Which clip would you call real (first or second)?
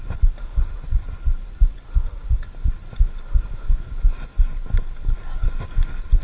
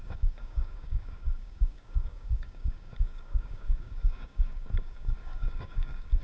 first